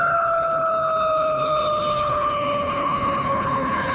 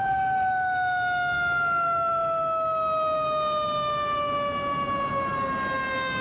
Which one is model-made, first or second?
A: first